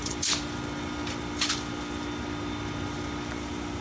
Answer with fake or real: real